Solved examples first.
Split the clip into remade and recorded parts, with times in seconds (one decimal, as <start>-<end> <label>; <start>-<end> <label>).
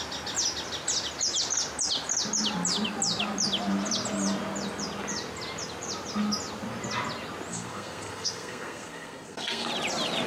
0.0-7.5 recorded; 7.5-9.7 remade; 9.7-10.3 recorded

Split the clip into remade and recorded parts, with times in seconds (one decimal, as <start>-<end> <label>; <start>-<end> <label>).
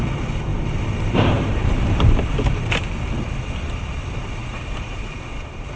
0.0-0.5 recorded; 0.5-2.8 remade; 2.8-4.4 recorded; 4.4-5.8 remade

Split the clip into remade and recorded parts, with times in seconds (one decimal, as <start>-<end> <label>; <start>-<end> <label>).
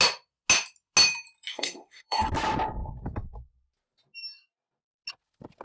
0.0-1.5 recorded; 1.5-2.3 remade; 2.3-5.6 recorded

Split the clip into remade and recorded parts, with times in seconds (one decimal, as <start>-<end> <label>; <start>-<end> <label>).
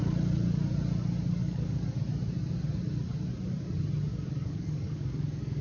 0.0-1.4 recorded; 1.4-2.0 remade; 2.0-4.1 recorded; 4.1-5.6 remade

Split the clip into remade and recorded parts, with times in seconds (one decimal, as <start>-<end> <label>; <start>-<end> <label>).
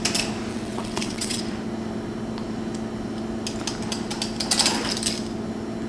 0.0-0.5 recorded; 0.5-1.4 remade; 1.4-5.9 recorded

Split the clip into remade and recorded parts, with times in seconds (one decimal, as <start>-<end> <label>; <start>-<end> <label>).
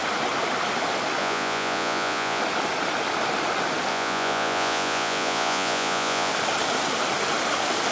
0.0-1.2 recorded; 1.2-2.4 remade; 2.4-3.9 recorded; 3.9-6.3 remade; 6.3-7.9 recorded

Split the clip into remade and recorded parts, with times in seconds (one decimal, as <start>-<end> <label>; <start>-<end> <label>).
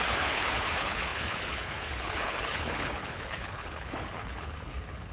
0.0-5.1 remade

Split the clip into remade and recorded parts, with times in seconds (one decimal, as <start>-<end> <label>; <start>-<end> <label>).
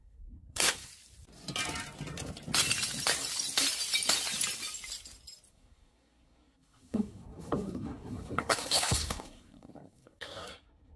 0.0-0.9 remade; 0.9-5.5 recorded; 5.5-11.0 remade